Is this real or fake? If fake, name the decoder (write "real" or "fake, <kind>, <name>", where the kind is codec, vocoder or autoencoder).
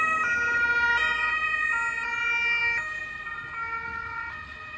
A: real